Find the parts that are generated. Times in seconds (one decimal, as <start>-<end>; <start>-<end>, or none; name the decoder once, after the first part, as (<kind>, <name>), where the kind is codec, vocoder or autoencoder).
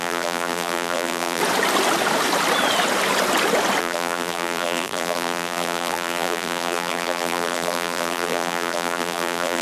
0.0-1.4 (vocoder, BigVGAN v2); 3.8-9.6